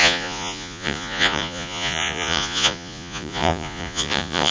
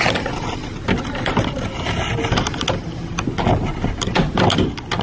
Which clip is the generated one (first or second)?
first